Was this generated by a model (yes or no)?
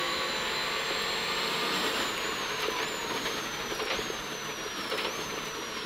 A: yes